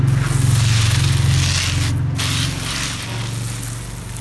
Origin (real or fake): real